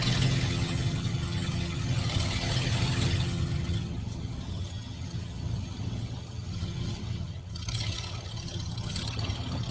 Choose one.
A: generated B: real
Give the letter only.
A